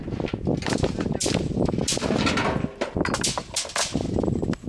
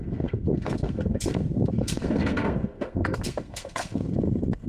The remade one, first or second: second